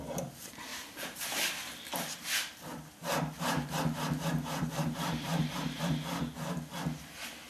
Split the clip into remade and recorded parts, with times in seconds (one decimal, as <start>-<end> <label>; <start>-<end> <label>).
0.0-0.7 recorded; 0.7-1.6 remade; 1.6-3.0 recorded; 3.0-5.8 remade; 5.8-7.5 recorded